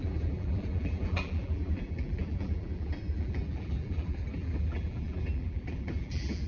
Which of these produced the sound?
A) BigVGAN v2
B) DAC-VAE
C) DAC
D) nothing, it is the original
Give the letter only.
A